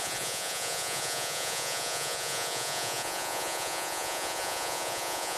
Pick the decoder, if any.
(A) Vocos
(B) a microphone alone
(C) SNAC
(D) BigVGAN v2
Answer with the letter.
A